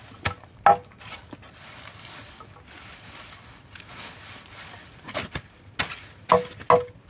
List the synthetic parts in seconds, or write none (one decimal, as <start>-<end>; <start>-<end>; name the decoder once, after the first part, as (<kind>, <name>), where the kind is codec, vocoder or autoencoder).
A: none